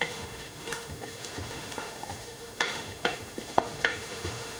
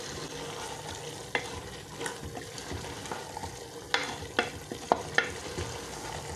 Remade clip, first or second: first